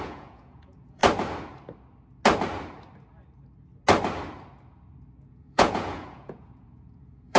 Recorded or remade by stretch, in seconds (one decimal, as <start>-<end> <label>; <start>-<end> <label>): 0.0-1.0 remade; 1.0-5.2 recorded; 5.2-7.4 remade